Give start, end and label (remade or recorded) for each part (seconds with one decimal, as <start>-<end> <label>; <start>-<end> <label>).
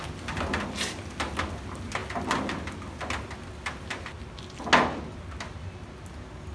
0.0-6.5 recorded